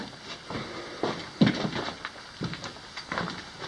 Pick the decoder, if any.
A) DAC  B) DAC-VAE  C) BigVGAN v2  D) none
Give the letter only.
D